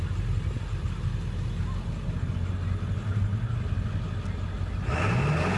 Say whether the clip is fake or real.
real